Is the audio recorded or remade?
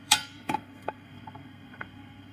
remade